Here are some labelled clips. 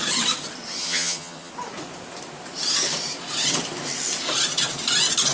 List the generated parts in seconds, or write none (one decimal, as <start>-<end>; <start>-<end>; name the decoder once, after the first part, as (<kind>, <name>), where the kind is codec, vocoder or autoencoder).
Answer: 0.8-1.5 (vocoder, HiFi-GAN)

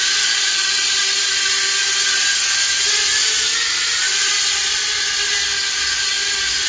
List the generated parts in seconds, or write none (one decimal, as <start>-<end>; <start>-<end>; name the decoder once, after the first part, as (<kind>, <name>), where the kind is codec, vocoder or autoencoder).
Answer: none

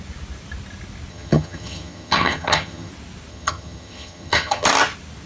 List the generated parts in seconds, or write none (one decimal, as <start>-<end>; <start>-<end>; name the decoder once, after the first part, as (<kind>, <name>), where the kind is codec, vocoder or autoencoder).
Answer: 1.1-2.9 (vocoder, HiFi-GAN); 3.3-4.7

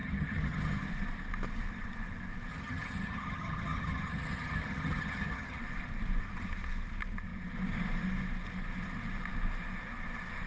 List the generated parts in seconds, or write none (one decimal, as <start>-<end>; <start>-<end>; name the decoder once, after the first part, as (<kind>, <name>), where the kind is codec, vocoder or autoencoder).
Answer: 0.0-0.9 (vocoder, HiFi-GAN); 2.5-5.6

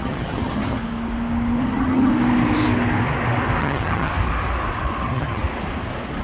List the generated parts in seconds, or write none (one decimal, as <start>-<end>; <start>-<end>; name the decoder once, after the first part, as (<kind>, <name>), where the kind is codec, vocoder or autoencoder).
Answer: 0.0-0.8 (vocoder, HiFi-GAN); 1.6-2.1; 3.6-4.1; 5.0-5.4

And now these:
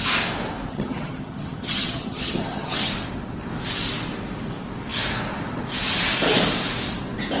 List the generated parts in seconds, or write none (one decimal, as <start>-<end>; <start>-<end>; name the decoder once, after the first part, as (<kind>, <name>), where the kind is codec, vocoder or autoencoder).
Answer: 0.7-2.9 (vocoder, HiFi-GAN)

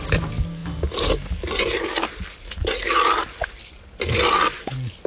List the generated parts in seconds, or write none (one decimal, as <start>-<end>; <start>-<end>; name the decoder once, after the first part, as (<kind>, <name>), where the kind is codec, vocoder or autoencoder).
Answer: none